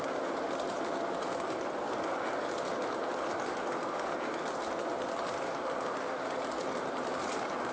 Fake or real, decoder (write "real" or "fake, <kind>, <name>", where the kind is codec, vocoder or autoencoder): real